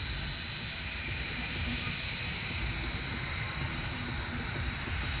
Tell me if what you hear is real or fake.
real